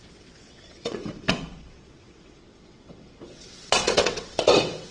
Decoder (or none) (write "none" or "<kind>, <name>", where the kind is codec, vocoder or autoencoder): vocoder, WaveNeXt